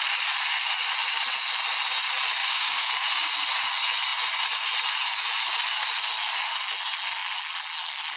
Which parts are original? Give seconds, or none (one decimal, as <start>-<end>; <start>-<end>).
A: 0.0-2.4; 2.9-8.2